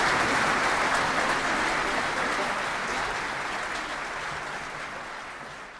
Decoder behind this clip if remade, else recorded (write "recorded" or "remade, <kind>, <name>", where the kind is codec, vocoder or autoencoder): recorded